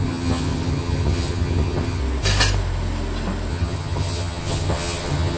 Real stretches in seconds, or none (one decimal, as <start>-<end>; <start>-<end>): 2.0-3.5